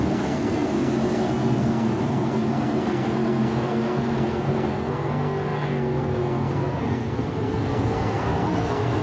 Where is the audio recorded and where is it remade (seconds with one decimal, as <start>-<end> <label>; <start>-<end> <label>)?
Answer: 0.0-9.0 remade